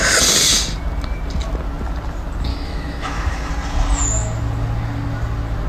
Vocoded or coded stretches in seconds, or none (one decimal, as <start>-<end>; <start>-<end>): 2.5-3.5